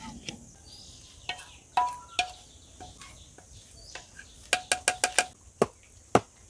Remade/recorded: recorded